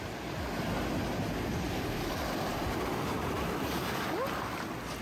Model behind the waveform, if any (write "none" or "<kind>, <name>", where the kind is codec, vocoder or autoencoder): none